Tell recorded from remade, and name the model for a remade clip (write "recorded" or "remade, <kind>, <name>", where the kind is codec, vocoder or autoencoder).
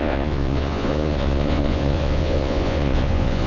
remade, vocoder, Vocos